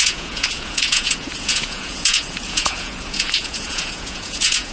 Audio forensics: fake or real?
fake